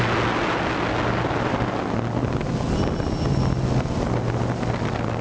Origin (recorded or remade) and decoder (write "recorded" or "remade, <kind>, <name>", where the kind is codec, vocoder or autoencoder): recorded